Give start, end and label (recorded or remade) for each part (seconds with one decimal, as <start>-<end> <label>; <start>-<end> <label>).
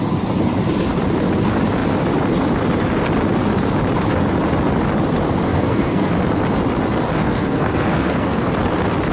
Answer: 0.0-5.5 recorded; 5.5-6.1 remade; 6.1-7.2 recorded; 7.2-8.5 remade; 8.5-9.1 recorded